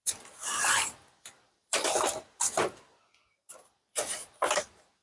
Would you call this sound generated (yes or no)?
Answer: no